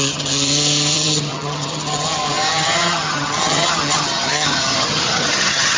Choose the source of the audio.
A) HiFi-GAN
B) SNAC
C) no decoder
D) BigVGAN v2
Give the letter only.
A